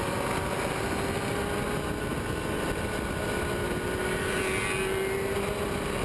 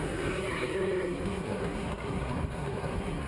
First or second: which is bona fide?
first